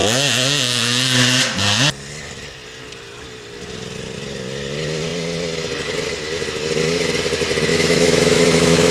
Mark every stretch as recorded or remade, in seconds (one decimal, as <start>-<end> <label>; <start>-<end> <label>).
0.0-7.7 recorded; 7.7-8.9 remade

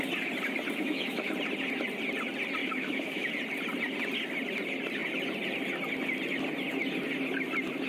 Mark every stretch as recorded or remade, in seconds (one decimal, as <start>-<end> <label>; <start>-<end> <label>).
0.0-0.8 recorded; 0.8-1.3 remade; 1.3-2.6 recorded; 2.6-3.3 remade; 3.3-7.9 recorded

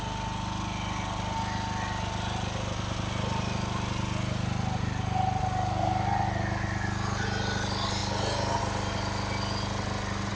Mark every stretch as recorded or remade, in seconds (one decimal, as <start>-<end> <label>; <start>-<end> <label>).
0.0-10.3 recorded

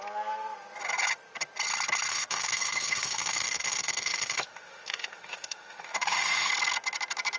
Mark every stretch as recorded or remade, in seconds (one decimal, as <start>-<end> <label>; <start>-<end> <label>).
0.0-2.1 recorded; 2.1-6.5 remade; 6.5-7.4 recorded

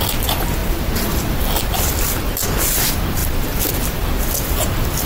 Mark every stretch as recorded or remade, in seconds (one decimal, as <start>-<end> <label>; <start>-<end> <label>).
0.0-5.1 recorded

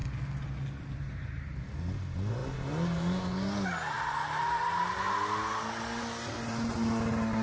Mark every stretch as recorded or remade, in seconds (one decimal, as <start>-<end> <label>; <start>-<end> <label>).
0.0-7.4 recorded

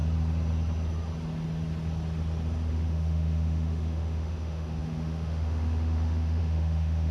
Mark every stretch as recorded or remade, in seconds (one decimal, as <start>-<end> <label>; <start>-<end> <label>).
0.0-2.7 recorded; 2.7-7.1 remade